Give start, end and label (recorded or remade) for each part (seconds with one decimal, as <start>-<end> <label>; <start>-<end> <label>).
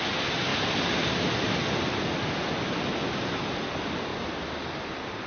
0.0-5.3 recorded